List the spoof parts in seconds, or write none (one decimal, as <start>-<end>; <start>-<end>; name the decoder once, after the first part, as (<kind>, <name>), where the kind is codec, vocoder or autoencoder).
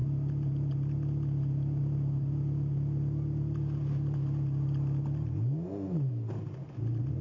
none